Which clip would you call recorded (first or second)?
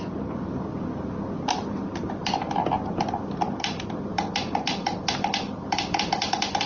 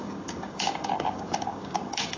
first